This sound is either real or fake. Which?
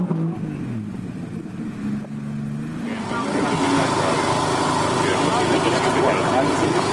real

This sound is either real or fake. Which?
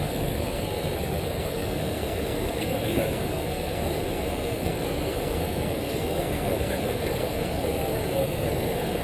fake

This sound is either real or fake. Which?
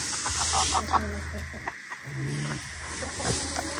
real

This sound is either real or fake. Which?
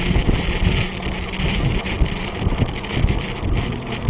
fake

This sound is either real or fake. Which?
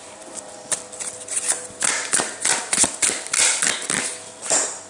fake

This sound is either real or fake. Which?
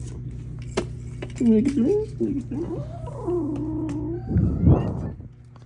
real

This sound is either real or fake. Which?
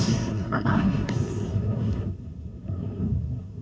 fake